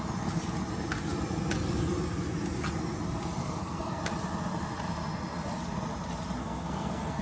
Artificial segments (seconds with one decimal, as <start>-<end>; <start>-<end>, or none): 3.4-4.0; 6.4-7.2